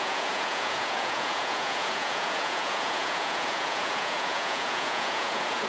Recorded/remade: remade